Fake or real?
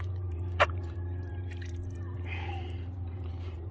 fake